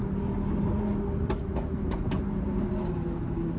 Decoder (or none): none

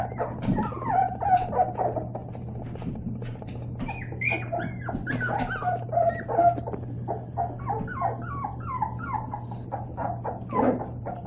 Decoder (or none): none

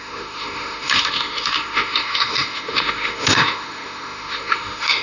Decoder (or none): autoencoder, DAC-VAE